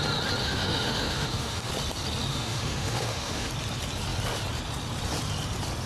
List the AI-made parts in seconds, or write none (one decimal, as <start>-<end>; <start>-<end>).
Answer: 0.4-1.7; 2.3-3.5